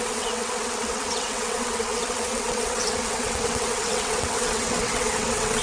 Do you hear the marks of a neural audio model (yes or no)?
yes